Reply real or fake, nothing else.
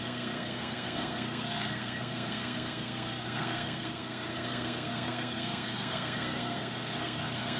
fake